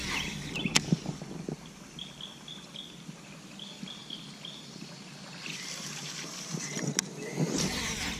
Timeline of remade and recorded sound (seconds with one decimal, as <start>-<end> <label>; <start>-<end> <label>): 0.0-8.2 recorded